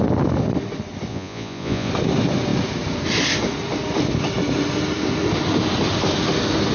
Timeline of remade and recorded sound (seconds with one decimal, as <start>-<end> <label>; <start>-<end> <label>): 0.0-1.1 recorded; 1.1-1.9 remade; 1.9-6.7 recorded